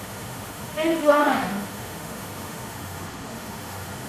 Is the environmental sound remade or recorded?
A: remade